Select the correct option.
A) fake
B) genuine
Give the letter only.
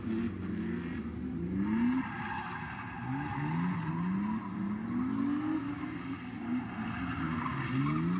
B